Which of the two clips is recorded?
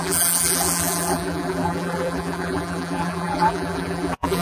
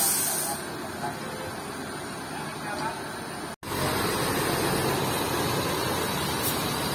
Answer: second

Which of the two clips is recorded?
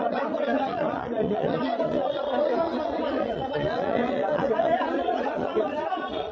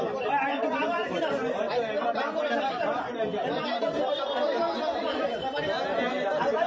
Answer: second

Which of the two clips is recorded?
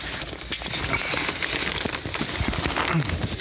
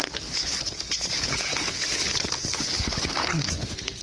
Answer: first